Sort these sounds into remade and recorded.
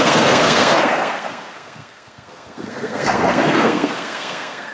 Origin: remade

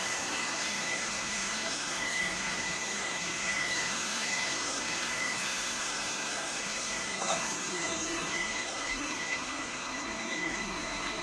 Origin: remade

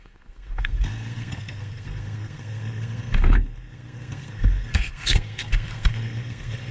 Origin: remade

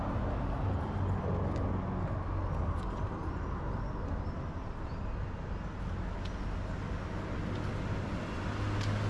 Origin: recorded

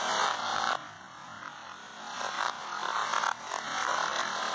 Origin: recorded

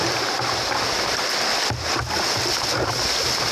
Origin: recorded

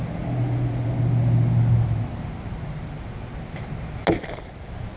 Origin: recorded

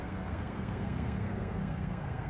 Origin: remade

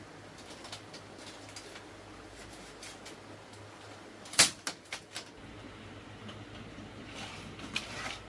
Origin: recorded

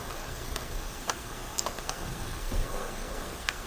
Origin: remade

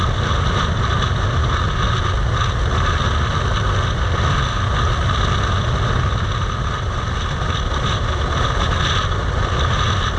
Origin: recorded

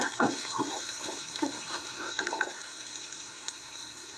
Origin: remade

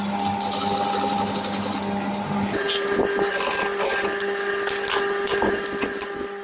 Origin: recorded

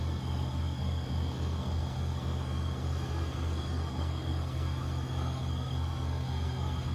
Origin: remade